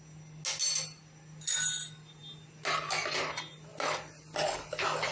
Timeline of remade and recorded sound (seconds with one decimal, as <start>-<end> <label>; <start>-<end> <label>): 0.0-5.1 recorded